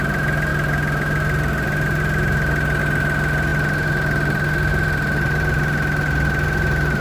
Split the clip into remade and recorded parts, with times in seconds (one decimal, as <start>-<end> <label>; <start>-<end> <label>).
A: 0.0-7.0 recorded